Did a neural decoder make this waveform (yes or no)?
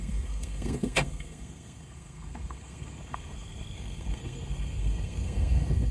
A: yes